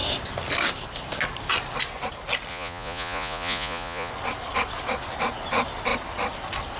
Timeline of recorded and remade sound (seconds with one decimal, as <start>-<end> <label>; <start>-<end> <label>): 0.0-2.5 recorded; 2.5-4.1 remade; 4.1-6.8 recorded